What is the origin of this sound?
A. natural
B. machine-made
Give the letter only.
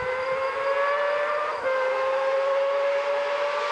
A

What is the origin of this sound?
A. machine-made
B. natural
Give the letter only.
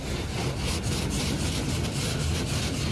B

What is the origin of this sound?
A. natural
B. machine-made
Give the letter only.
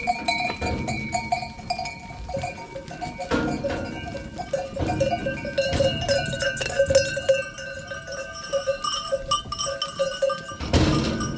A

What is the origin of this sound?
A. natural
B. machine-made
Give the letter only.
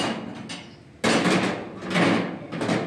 A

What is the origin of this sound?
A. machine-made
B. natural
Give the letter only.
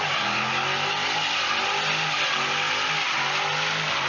B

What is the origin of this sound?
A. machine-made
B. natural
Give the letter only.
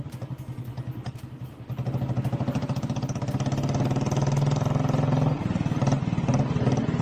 B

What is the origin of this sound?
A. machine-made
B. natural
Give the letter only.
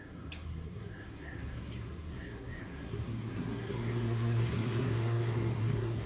A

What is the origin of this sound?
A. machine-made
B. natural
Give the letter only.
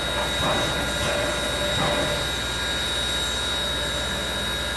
B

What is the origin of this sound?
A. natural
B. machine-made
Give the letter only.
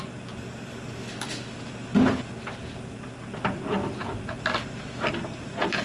A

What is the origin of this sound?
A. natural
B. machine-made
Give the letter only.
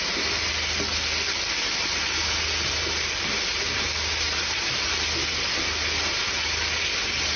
A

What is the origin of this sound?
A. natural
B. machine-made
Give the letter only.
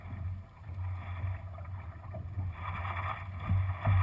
A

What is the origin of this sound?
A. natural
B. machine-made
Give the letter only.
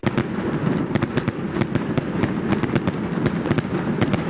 A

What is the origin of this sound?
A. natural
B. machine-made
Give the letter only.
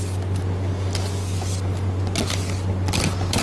A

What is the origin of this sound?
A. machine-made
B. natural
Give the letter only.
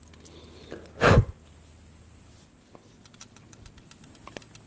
B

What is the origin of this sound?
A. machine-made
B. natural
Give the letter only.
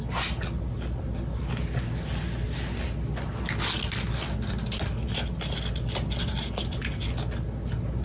B